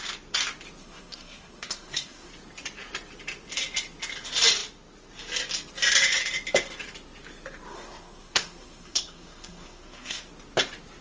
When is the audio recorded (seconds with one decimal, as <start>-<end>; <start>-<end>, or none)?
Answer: 0.0-0.8; 2.3-7.7; 10.3-11.0